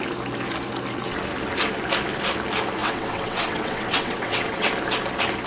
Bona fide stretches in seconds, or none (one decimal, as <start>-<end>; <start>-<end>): 0.0-2.8; 4.7-5.5